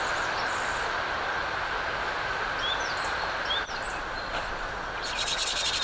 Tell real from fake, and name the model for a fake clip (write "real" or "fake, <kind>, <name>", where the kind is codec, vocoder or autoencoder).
real